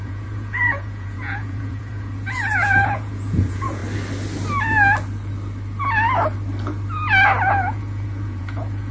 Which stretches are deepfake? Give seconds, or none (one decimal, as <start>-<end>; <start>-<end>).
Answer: 0.0-3.8; 7.5-8.9